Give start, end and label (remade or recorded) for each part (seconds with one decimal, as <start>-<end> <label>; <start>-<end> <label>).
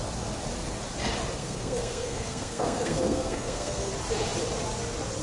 0.0-1.4 recorded; 1.4-3.9 remade; 3.9-5.2 recorded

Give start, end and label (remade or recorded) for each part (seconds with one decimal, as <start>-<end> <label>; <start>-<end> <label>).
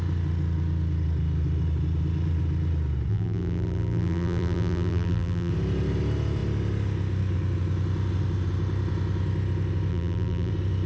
0.0-3.1 recorded; 3.1-5.5 remade; 5.5-9.9 recorded; 9.9-10.5 remade; 10.5-10.9 recorded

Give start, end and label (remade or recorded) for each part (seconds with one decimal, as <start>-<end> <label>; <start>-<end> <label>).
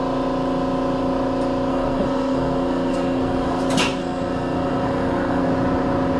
0.0-1.7 recorded; 1.7-3.6 remade; 3.6-4.0 recorded; 4.0-5.5 remade; 5.5-6.2 recorded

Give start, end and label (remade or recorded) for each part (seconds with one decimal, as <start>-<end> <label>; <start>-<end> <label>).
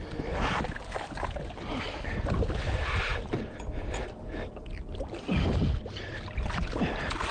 0.0-7.3 recorded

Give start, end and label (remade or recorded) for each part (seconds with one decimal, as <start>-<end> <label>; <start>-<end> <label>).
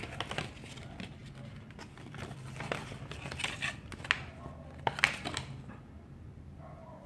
0.0-7.1 recorded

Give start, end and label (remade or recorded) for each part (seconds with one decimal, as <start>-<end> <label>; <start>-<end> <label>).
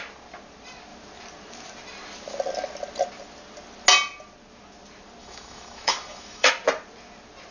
0.0-5.2 recorded; 5.2-6.5 remade; 6.5-7.5 recorded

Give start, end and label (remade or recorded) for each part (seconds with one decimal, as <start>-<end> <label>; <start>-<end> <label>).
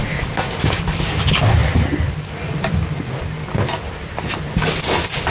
0.0-5.3 recorded